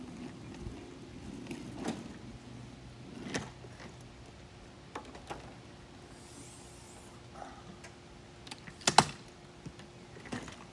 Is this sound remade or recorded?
recorded